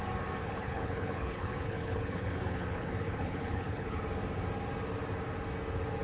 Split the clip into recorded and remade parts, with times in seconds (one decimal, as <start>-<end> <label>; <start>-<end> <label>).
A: 0.0-0.4 recorded; 0.4-4.0 remade; 4.0-6.0 recorded